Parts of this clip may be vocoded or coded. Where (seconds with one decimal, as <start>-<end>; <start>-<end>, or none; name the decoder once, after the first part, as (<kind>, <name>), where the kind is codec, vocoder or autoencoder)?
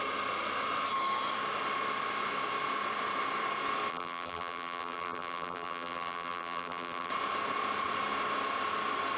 3.9-7.1 (vocoder, BigVGAN v2)